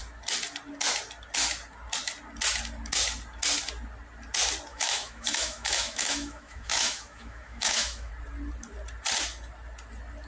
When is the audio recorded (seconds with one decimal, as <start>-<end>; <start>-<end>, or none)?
0.0-4.7; 8.1-10.3